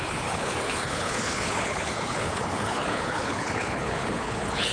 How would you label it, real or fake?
fake